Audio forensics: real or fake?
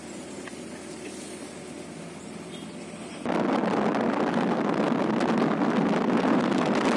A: real